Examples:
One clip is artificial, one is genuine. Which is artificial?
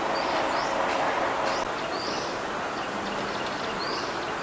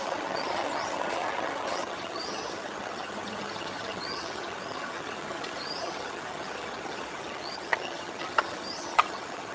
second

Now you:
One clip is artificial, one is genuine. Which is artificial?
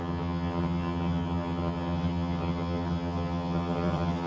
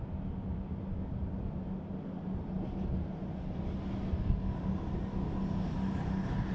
first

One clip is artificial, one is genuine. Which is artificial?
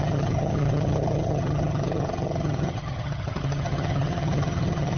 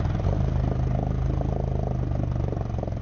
first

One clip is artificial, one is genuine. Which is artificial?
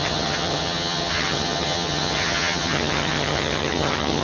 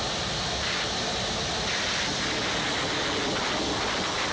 first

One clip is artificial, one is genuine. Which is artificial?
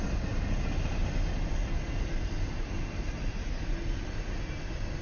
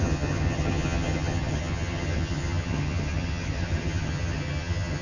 second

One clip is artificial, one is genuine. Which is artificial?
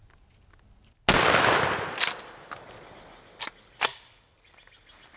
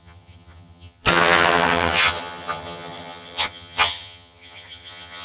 second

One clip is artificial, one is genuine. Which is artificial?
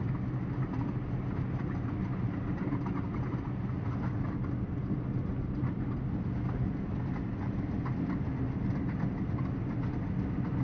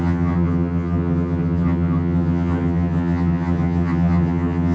second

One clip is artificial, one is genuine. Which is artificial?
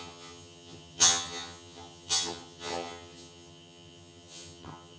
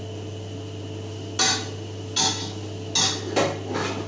first